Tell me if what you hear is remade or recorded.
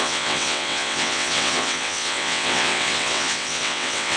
remade